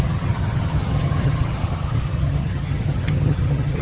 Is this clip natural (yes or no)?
no